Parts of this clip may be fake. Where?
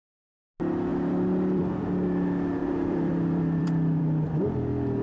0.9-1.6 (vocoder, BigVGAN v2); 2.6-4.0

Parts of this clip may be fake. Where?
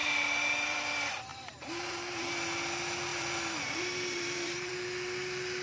0.0-0.9 (vocoder, BigVGAN v2); 1.3-2.3; 3.1-4.7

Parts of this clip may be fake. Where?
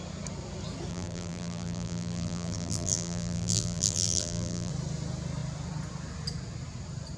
0.9-4.7 (vocoder, BigVGAN v2)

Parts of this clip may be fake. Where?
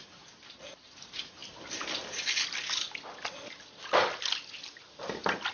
none